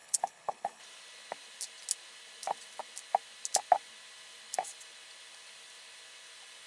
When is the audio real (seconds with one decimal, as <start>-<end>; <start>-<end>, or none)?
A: 0.8-6.7